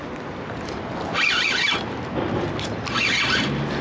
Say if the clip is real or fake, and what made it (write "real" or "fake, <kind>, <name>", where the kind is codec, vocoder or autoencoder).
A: real